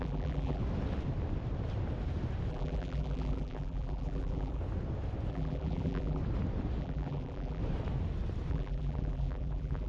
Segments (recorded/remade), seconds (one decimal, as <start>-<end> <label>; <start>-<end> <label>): 0.0-0.6 remade; 0.6-2.5 recorded; 2.5-4.6 remade; 4.6-5.3 recorded; 5.3-6.2 remade; 6.2-6.8 recorded; 6.8-7.6 remade; 7.6-8.5 recorded; 8.5-9.9 remade